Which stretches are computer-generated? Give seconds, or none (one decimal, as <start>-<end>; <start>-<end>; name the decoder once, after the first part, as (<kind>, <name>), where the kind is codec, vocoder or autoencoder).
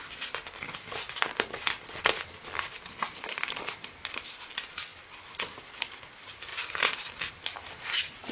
4.9-5.7 (vocoder, BigVGAN v2)